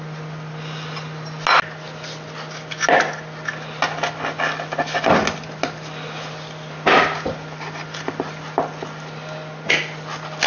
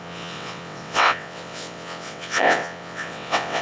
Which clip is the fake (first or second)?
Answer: second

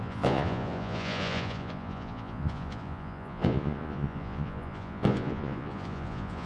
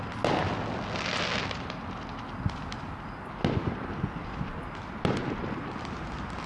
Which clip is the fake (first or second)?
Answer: first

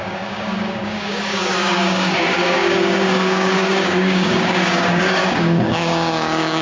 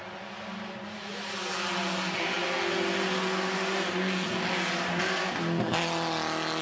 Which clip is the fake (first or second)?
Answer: first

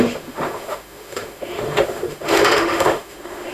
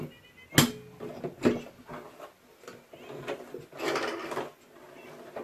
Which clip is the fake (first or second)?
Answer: first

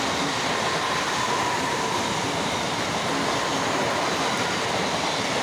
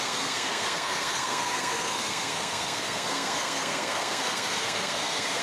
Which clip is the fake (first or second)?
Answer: second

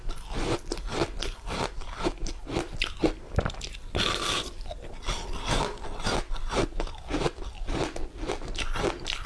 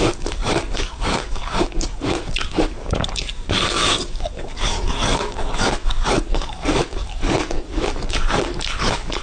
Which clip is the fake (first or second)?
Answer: second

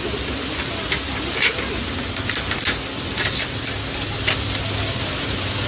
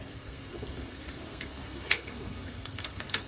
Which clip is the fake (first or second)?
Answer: second